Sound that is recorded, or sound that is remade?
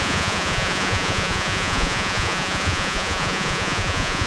remade